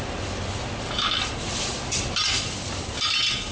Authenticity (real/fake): real